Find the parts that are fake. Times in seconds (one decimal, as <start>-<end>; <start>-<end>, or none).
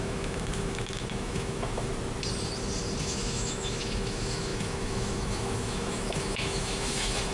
0.0-1.9; 3.0-7.3